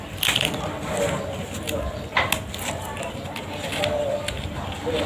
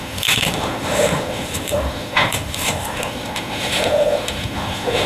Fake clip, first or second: second